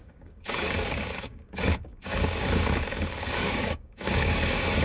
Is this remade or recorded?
remade